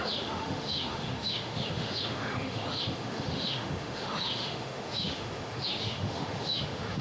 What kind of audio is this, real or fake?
fake